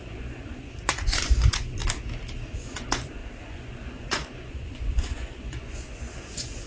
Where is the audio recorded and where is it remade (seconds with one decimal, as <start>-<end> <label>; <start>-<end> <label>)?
0.0-1.8 remade; 1.8-2.5 recorded; 2.5-6.7 remade